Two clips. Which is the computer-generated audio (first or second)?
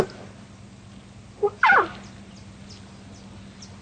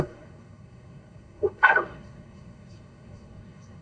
second